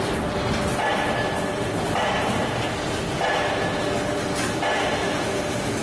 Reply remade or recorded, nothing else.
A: recorded